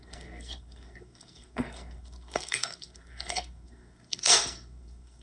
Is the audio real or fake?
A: fake